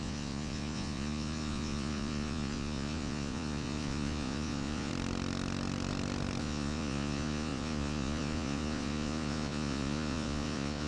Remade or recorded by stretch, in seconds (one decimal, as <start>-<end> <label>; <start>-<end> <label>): 0.0-4.9 remade; 4.9-6.4 recorded; 6.4-10.9 remade